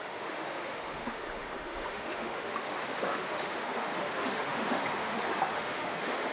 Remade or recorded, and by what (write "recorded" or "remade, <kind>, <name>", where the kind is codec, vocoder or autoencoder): remade, autoencoder, DAC-VAE